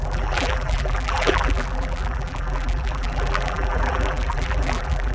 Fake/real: fake